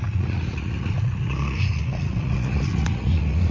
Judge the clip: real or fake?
fake